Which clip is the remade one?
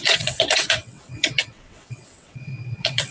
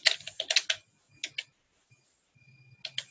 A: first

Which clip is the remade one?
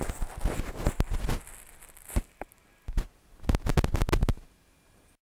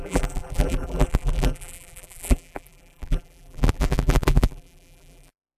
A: second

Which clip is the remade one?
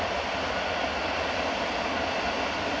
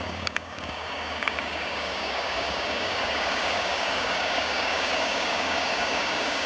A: second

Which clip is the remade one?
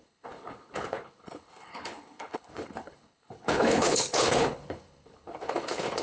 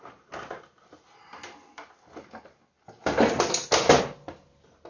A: first